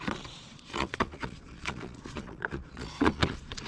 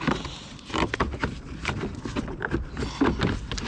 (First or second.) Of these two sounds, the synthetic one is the first